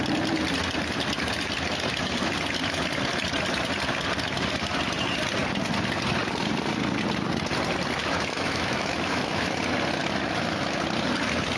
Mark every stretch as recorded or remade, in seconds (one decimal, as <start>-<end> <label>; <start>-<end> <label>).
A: 0.0-8.0 recorded; 8.0-9.6 remade; 9.6-10.0 recorded; 10.0-10.8 remade; 10.8-11.6 recorded